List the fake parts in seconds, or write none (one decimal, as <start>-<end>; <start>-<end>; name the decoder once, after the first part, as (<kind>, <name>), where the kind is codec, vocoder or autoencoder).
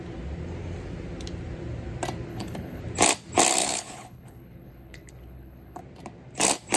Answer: 2.3-2.8 (codec, HILCodec); 3.6-5.8